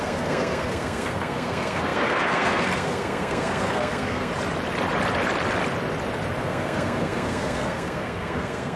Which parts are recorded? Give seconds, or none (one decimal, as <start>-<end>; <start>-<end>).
4.3-6.4